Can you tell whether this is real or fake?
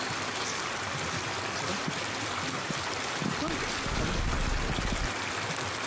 real